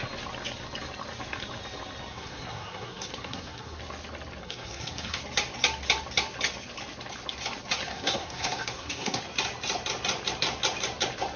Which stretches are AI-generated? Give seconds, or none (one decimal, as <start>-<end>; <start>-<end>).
2.1-3.8; 4.4-5.2; 7.9-9.2